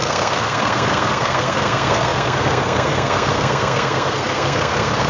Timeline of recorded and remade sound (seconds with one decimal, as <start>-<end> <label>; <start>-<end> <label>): 0.0-5.1 remade